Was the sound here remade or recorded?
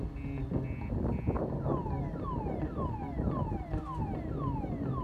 recorded